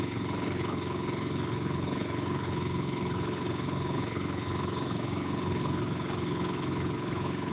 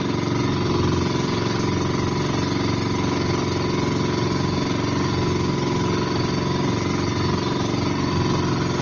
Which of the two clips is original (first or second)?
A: second